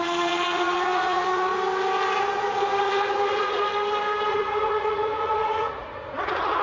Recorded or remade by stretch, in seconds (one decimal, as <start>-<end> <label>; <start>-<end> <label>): 0.0-1.5 remade; 1.5-2.2 recorded; 2.2-3.7 remade; 3.7-4.3 recorded; 4.3-6.6 remade